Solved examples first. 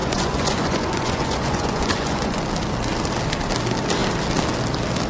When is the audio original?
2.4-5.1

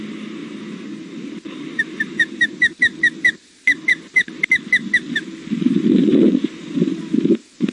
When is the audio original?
0.0-0.4; 4.5-6.1; 6.7-7.7

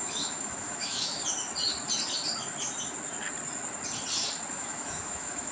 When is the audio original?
1.2-4.5